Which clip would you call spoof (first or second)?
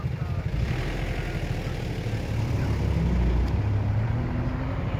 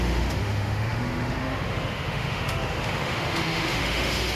second